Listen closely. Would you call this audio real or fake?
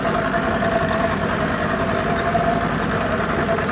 real